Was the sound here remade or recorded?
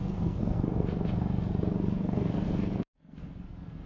remade